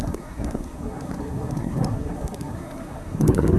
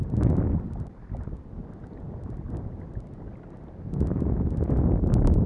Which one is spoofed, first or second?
first